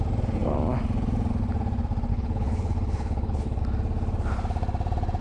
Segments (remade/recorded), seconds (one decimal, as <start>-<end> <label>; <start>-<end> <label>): 0.0-2.1 recorded; 2.1-3.6 remade; 3.6-5.2 recorded